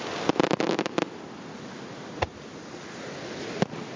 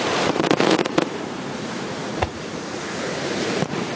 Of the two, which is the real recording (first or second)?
first